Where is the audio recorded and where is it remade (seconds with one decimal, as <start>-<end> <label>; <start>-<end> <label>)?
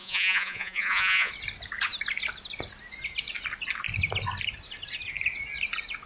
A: 0.0-1.3 remade; 1.3-6.1 recorded